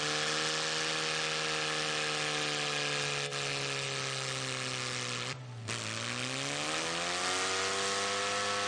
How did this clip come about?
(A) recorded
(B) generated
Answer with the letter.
A